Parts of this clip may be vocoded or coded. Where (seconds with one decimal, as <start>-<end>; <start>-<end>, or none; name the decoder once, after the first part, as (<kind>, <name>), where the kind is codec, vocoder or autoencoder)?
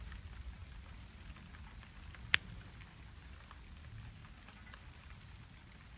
none